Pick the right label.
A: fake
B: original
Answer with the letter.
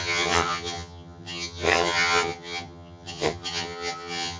A